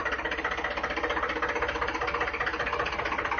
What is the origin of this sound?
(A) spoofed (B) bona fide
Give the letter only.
B